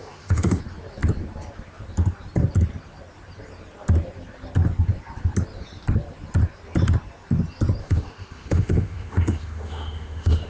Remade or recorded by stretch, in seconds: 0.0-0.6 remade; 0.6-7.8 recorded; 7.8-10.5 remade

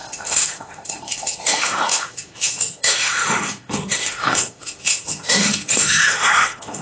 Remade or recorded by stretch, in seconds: 0.0-6.8 remade

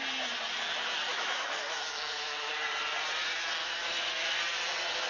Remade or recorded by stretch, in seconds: 0.0-1.1 recorded; 1.1-2.5 remade; 2.5-3.6 recorded; 3.6-4.4 remade; 4.4-5.1 recorded

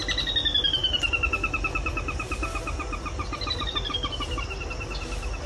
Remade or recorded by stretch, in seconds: 0.0-5.5 recorded

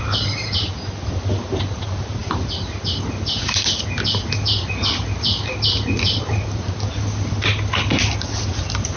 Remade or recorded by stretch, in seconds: 0.0-9.0 recorded

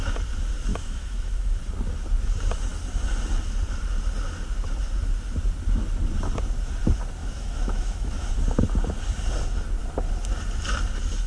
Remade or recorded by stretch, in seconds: 0.0-0.7 recorded; 0.7-1.6 remade; 1.6-7.2 recorded; 7.2-8.3 remade; 8.3-11.3 recorded